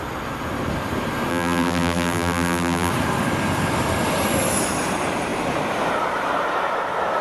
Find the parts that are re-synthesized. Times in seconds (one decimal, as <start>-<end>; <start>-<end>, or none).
1.3-2.9